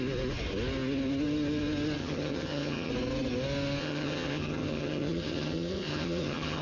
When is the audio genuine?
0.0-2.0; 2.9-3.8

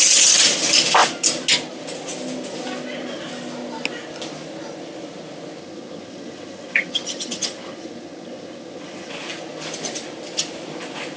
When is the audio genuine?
0.0-5.6; 9.1-11.2